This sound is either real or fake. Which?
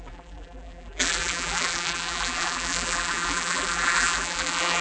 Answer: fake